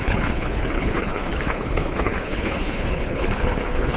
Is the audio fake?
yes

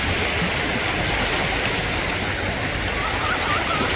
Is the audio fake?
no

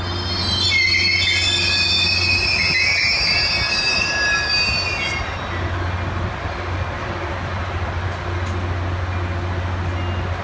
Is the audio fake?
no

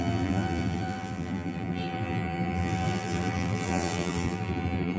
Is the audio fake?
yes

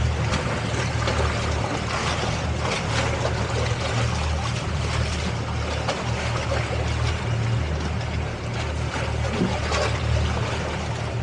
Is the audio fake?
no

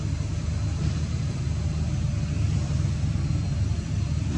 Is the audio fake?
no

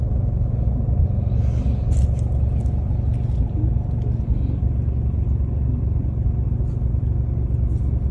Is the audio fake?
no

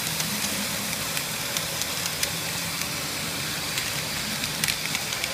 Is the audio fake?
yes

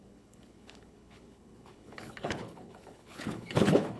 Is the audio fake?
yes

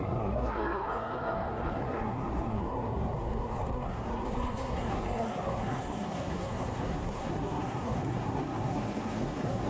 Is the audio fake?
yes